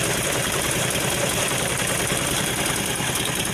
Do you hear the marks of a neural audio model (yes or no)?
yes